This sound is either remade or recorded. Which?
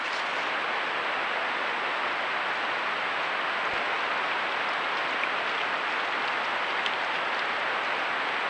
recorded